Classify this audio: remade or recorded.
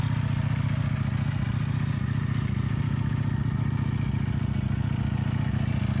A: recorded